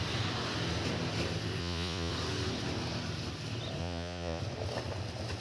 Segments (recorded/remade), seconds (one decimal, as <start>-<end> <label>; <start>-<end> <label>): 0.0-1.6 recorded; 1.6-2.1 remade; 2.1-3.8 recorded; 3.8-4.4 remade; 4.4-5.4 recorded